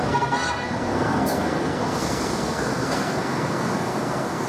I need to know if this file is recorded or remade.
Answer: remade